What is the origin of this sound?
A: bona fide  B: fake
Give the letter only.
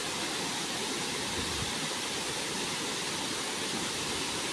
A